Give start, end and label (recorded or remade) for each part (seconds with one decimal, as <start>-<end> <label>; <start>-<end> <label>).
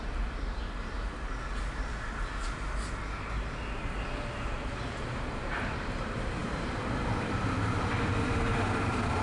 0.0-1.1 remade; 1.1-4.7 recorded; 4.7-9.2 remade